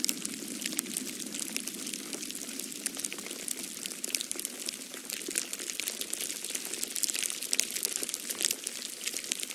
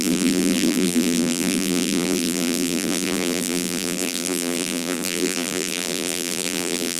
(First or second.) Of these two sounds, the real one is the first